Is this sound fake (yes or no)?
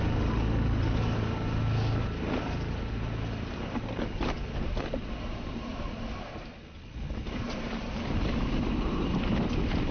no